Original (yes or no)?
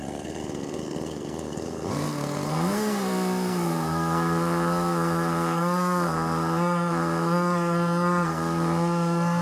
no